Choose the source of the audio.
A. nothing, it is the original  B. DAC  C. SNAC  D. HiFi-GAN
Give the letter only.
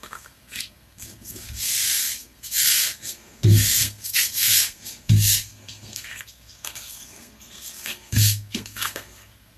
C